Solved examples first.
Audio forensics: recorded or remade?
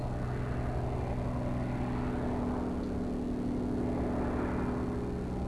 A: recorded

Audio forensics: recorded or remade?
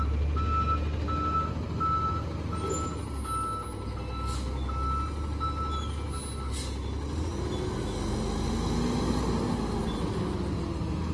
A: recorded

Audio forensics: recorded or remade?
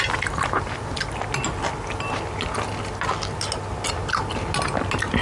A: recorded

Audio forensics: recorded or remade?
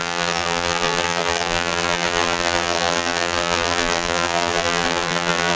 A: remade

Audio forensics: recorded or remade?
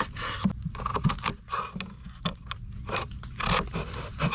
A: recorded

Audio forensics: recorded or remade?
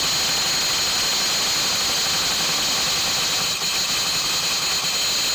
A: recorded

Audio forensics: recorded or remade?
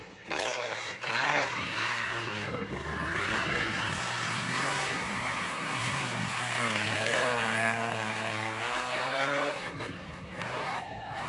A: remade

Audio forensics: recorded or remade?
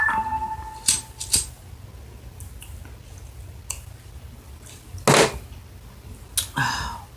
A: recorded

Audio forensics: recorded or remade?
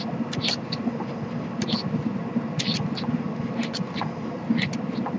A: recorded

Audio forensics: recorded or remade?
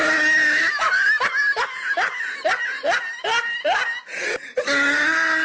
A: recorded